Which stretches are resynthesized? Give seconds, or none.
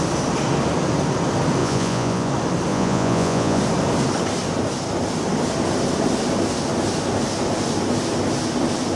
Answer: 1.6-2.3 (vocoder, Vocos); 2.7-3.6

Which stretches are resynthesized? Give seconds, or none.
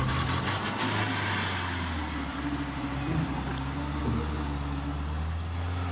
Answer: 2.3-4.0 (vocoder, BigVGAN v2)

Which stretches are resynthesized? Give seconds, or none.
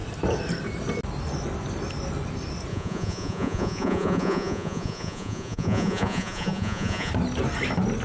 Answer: 2.7-7.1 (vocoder, Vocos)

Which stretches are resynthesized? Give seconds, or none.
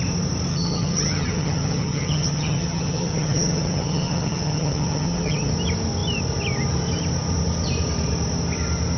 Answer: 0.5-5.5 (vocoder, HiFi-GAN)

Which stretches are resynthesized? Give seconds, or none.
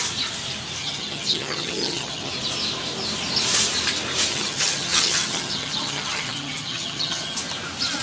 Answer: 0.8-2.3 (vocoder, HiFi-GAN); 4.3-7.4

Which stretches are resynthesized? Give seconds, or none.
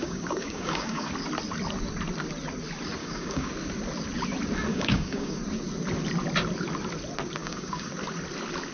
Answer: 0.0-1.1 (codec, DAC); 3.0-3.5; 4.7-5.4; 7.4-7.9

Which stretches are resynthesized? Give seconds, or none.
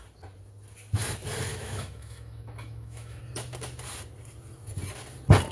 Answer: 1.5-3.2 (autoencoder, DAC-VAE)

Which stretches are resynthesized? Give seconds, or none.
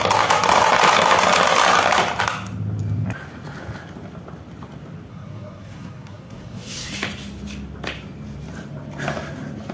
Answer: 5.1-6.9 (codec, SNAC)